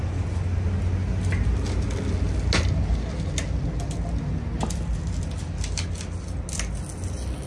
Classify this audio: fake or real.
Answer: real